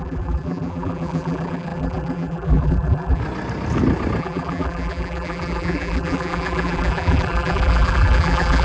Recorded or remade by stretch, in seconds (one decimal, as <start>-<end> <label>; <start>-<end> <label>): 0.0-3.2 remade; 3.2-4.2 recorded; 4.2-8.6 remade